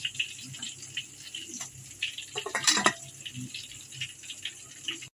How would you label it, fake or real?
real